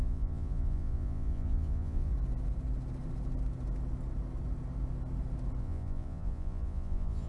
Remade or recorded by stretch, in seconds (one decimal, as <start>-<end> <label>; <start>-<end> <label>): 0.0-2.1 remade; 2.1-5.6 recorded; 5.6-7.3 remade